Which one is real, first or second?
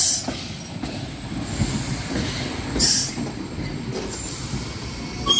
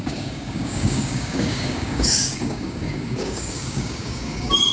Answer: first